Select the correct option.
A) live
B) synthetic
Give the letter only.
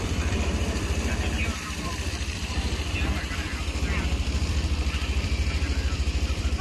B